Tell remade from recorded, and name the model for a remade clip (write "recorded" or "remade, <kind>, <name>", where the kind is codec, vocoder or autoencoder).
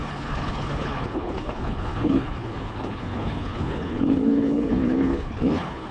remade, codec, HILCodec